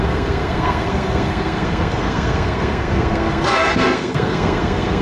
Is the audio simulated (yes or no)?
yes